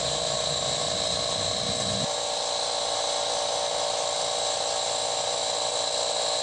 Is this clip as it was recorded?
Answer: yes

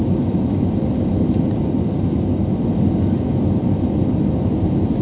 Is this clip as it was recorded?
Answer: yes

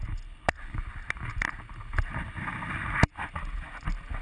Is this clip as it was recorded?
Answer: yes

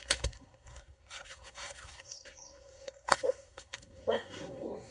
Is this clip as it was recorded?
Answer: no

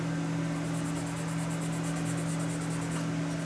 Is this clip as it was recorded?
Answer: yes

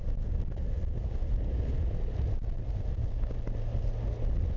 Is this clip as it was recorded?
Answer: yes